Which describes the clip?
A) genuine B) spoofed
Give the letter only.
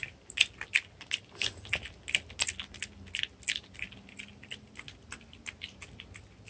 A